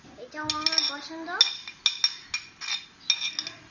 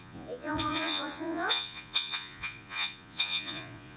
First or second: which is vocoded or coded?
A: second